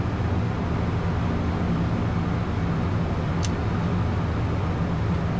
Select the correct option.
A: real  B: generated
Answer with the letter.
A